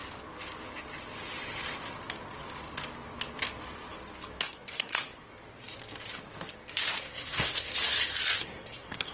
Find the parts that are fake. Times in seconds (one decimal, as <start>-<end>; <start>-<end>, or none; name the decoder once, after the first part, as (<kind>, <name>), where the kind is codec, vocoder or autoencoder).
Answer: 4.4-5.3 (codec, SNAC); 7.0-7.7; 8.4-9.1

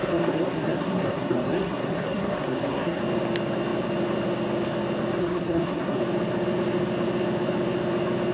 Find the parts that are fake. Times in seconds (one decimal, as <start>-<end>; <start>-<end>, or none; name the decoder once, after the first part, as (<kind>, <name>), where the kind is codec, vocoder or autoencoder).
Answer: 0.0-3.0 (codec, SNAC); 5.2-6.0